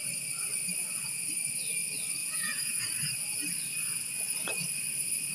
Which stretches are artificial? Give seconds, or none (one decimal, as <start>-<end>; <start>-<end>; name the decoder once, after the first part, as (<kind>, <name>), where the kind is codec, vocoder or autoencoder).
2.2-2.8 (vocoder, Vocos)